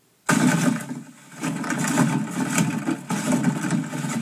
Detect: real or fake real